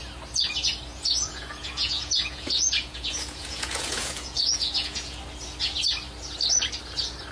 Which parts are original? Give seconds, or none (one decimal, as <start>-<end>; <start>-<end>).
0.0-0.9; 5.2-7.3